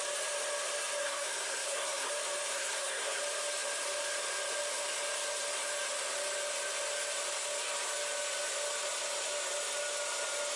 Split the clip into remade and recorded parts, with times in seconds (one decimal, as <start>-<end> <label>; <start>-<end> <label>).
0.0-1.0 recorded; 1.0-2.1 remade; 2.1-2.5 recorded; 2.5-3.2 remade; 3.2-10.6 recorded